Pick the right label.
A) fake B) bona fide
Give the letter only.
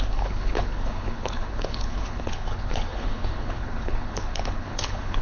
A